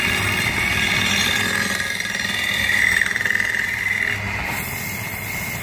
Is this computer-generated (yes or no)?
no